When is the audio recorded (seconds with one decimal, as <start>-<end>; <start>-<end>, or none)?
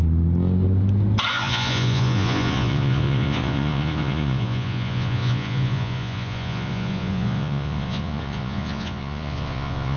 0.0-1.3